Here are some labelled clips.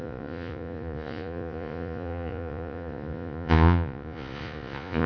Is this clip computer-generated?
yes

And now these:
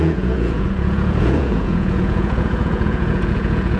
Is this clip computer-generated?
yes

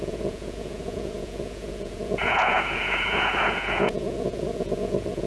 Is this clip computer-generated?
yes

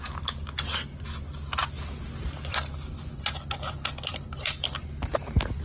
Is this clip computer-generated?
no